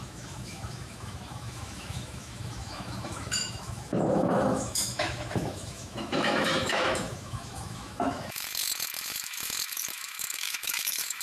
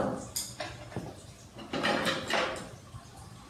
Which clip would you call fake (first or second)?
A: first